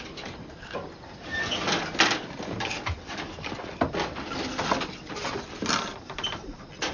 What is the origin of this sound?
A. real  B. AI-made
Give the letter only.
A